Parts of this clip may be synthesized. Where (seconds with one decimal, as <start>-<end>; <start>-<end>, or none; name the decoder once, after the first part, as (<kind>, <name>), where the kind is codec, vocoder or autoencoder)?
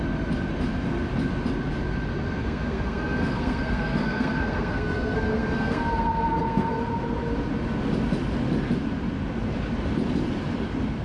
2.4-6.8 (codec, SNAC)